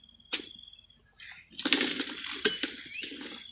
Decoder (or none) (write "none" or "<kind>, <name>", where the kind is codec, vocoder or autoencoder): none